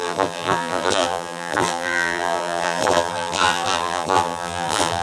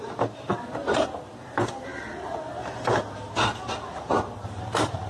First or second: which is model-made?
first